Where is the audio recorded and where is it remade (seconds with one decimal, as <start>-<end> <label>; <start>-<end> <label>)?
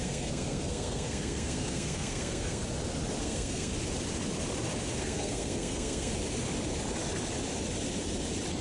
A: 0.0-2.6 remade; 2.6-3.2 recorded; 3.2-3.7 remade; 3.7-5.0 recorded; 5.0-6.1 remade; 6.1-8.6 recorded